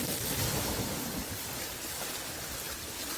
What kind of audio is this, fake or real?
real